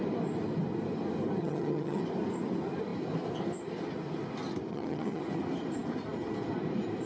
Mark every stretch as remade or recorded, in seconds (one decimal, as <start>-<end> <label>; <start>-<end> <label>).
0.0-1.4 recorded; 1.4-2.0 remade; 2.0-4.7 recorded; 4.7-5.2 remade; 5.2-7.1 recorded